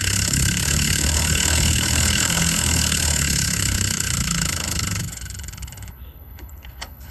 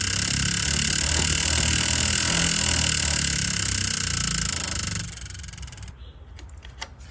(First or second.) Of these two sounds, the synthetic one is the first